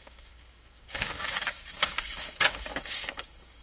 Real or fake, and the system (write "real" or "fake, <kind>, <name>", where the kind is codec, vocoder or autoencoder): fake, codec, DAC